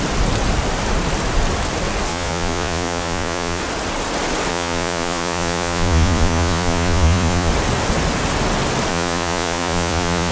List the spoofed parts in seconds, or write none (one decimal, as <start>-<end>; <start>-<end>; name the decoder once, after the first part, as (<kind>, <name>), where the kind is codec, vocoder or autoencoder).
2.1-3.6 (vocoder, Vocos); 4.5-7.5; 8.9-10.3